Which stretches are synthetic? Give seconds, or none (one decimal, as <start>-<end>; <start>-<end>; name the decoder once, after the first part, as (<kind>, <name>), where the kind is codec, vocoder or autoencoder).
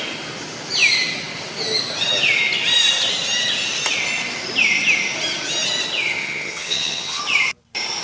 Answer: 6.2-7.2 (vocoder, HiFi-GAN)